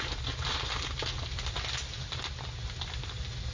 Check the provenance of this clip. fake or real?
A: real